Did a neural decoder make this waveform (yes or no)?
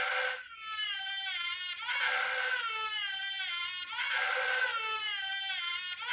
no